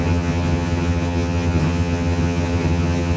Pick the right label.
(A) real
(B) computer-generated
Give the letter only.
B